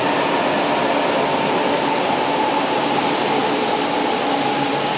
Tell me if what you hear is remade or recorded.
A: recorded